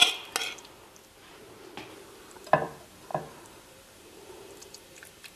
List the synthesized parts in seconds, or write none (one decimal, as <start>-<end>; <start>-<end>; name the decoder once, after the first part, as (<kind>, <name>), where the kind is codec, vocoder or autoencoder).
1.9-5.4 (vocoder, BigVGAN v2)